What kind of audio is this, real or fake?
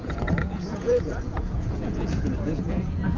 fake